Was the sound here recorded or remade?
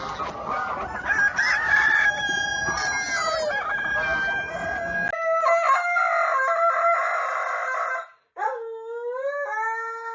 recorded